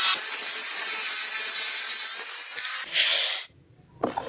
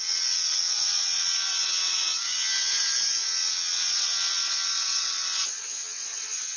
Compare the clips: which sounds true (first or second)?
first